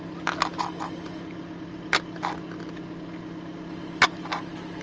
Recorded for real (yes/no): yes